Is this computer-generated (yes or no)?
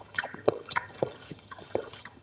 yes